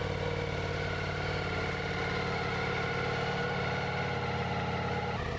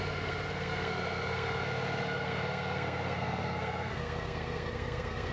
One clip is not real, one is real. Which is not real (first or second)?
second